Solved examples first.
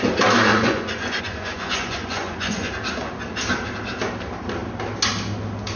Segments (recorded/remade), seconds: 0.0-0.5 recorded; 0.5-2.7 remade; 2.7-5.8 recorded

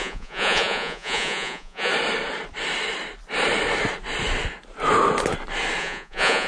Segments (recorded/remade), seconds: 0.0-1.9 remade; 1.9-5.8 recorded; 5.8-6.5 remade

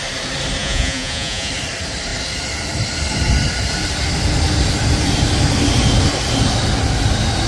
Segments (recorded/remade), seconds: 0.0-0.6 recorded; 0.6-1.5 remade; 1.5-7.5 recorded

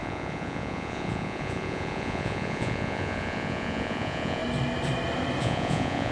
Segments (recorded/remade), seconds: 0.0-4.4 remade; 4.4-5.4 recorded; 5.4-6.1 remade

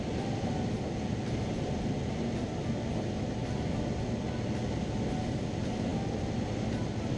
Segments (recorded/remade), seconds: 0.0-7.2 recorded